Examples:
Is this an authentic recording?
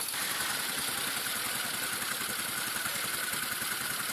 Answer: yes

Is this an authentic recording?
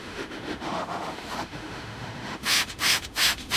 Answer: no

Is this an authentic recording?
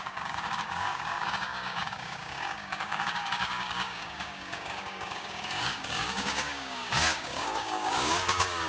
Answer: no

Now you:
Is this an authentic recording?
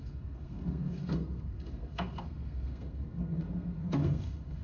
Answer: no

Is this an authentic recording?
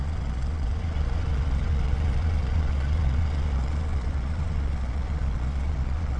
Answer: no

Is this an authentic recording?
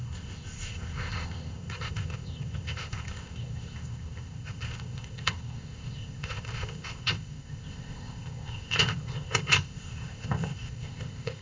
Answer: no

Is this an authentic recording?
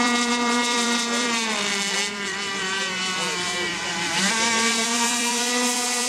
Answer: no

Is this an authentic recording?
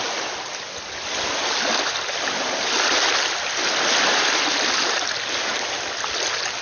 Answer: yes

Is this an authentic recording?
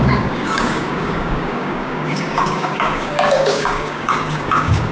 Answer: no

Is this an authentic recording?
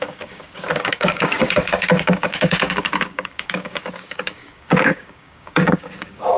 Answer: no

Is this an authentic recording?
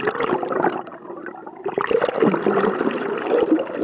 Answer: yes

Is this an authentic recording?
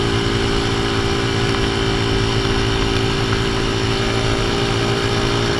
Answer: yes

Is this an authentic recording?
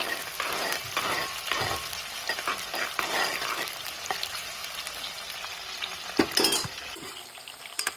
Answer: yes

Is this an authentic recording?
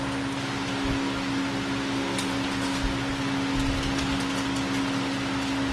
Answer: yes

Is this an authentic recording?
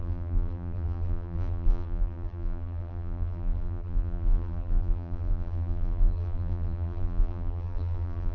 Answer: no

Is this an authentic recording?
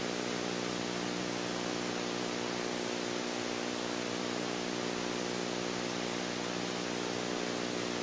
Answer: yes